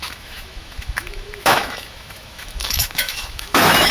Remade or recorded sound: remade